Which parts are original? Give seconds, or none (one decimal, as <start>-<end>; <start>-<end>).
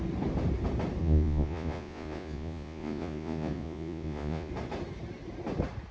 0.0-1.0; 4.5-5.9